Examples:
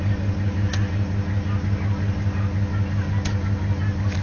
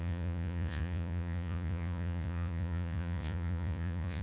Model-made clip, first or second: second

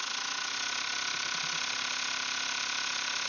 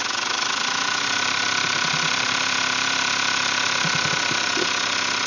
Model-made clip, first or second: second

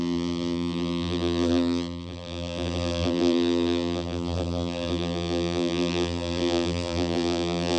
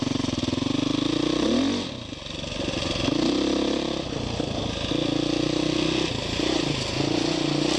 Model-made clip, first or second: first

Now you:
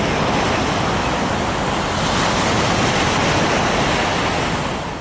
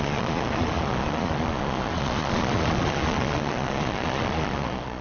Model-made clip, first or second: second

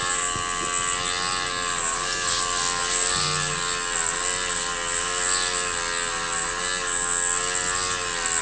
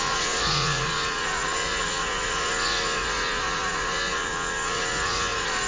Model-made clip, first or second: second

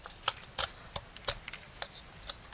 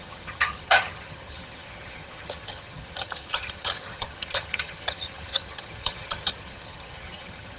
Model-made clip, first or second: second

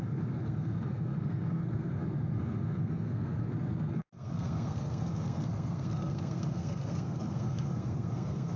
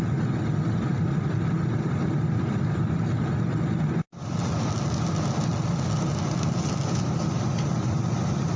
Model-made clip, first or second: first